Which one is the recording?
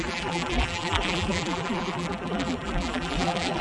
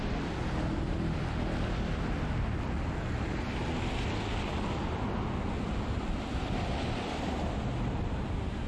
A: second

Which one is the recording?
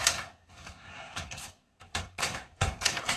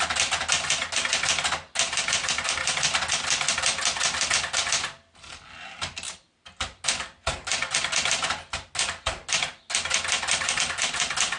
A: second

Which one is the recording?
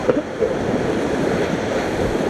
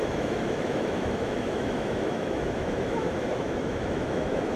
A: first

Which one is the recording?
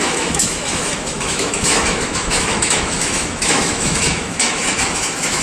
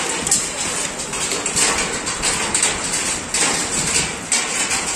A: second